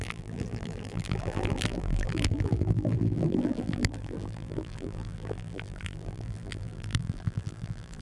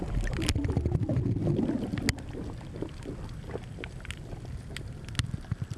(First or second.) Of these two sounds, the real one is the second